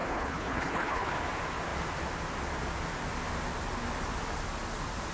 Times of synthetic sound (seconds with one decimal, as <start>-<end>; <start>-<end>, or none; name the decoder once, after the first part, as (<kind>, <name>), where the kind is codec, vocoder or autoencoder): 0.0-1.1 (codec, HILCodec)